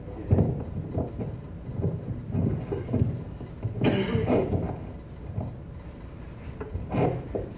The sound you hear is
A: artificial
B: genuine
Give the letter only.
B